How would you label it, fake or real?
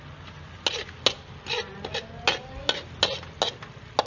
real